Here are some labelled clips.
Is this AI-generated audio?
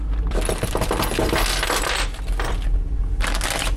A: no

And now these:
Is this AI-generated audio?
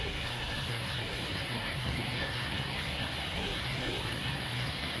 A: yes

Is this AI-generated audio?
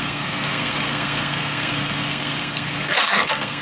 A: yes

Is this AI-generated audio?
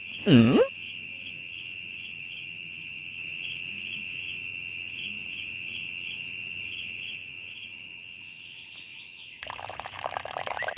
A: yes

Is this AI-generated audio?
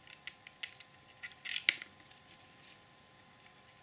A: no